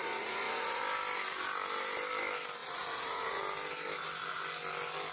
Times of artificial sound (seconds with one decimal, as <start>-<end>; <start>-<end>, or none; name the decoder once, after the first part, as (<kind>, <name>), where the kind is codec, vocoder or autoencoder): 0.0-0.8 (vocoder, Vocos); 2.6-3.4